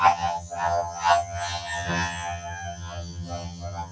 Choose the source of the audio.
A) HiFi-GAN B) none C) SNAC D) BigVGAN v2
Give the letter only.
A